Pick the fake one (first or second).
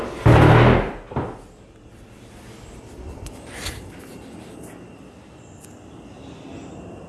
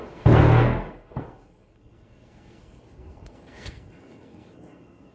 second